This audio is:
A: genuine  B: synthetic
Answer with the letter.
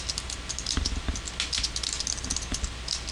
A